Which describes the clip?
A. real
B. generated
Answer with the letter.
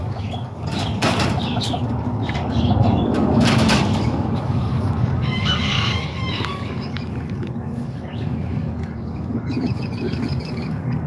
B